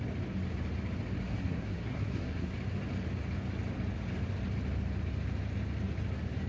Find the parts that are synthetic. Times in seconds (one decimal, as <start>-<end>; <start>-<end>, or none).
1.3-2.5